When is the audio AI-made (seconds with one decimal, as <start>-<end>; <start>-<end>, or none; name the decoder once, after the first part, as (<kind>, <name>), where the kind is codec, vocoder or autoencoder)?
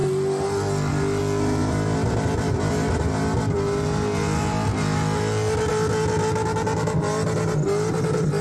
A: none